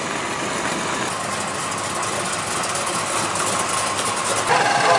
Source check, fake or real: real